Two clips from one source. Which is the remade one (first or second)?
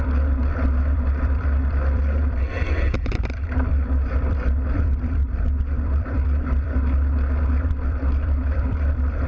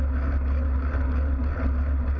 first